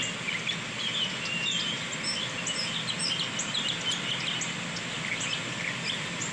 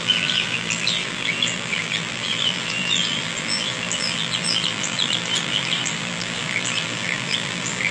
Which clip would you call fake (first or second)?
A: second